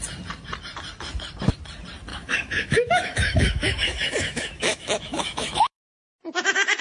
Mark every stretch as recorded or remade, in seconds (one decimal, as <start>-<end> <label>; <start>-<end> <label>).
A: 0.0-2.1 recorded; 2.1-5.9 remade; 5.9-6.8 recorded